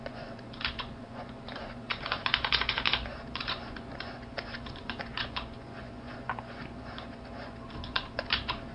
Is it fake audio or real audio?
fake